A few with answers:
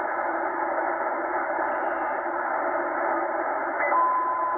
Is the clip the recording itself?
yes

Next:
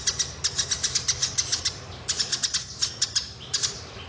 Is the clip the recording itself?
yes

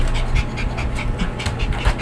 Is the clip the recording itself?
yes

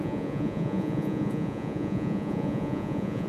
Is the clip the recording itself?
no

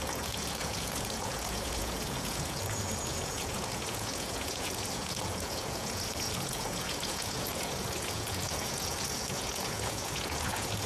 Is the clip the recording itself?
no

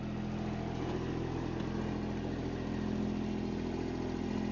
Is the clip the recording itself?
yes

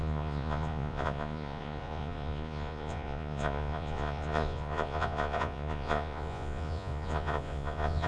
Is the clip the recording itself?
no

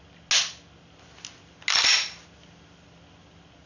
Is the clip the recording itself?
yes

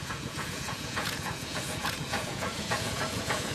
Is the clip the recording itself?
no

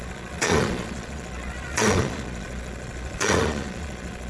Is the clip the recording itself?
no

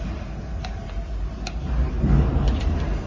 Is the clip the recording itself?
yes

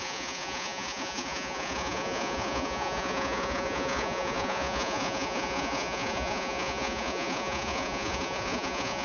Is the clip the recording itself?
no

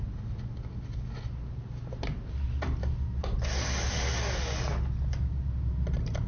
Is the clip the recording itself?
yes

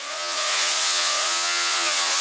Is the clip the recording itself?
no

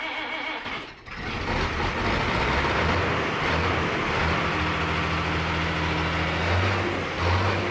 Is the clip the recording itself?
yes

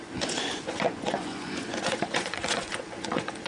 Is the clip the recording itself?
no